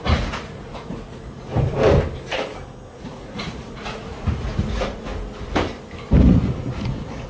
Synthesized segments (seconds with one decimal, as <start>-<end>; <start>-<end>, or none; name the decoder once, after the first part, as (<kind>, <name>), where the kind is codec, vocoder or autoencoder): 0.0-1.5 (vocoder, Vocos); 3.0-5.1; 6.7-7.3